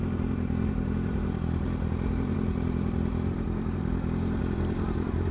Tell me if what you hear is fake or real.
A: fake